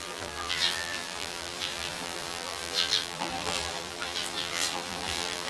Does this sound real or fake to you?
fake